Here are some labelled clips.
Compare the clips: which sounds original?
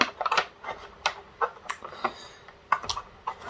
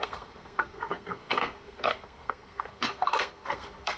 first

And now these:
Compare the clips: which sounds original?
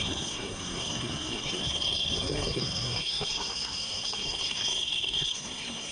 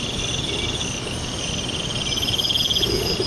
second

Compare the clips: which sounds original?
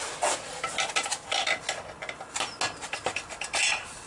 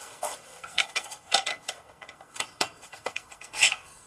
first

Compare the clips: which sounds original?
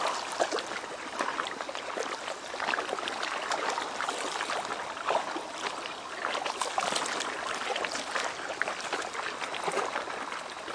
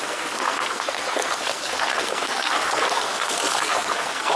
first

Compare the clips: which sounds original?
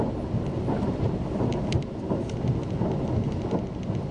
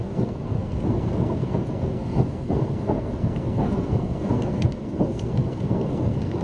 first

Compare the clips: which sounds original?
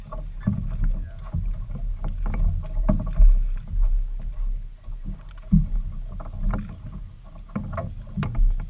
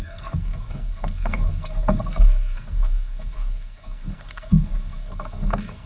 first